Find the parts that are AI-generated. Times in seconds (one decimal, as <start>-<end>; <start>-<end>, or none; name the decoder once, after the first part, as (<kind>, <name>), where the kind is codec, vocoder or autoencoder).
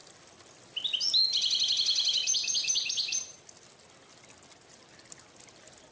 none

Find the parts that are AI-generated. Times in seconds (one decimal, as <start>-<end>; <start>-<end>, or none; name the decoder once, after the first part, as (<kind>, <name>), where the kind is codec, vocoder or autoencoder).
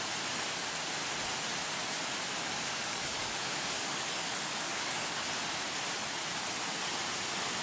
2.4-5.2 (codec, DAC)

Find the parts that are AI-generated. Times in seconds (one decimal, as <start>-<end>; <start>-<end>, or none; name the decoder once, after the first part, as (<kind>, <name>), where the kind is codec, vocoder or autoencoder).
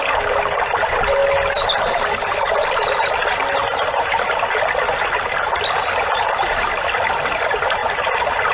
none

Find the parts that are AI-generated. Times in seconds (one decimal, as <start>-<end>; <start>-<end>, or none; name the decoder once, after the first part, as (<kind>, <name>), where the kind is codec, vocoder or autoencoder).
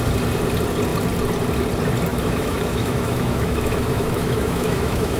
2.1-5.2 (autoencoder, DAC-VAE)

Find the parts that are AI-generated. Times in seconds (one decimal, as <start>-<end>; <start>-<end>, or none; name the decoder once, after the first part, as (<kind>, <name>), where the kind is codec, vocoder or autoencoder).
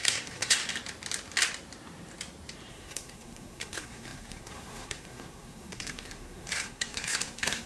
0.0-0.6 (codec, SNAC); 2.7-7.7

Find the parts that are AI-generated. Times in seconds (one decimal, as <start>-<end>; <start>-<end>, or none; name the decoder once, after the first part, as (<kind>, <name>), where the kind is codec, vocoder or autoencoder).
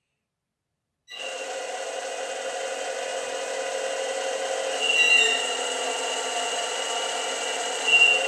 none